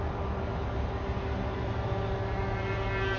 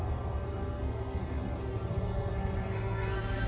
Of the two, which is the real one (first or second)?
first